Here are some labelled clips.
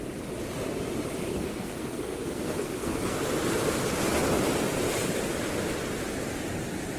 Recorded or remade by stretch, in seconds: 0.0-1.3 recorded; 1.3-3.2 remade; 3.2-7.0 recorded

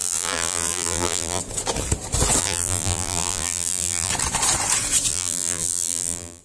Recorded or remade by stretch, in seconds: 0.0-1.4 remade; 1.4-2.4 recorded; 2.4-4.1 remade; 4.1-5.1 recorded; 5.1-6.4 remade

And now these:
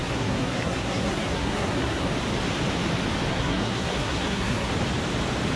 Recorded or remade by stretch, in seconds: 0.0-2.1 remade; 2.1-3.3 recorded; 3.3-4.7 remade; 4.7-5.6 recorded

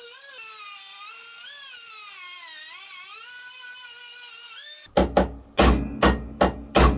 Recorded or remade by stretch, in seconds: 0.0-3.1 recorded; 3.1-4.0 remade; 4.0-7.0 recorded